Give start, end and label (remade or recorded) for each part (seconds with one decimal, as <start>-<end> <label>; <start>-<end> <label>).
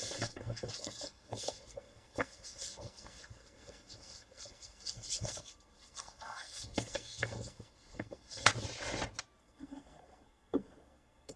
0.0-8.5 remade; 8.5-9.4 recorded; 9.4-11.4 remade